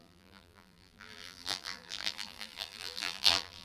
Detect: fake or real fake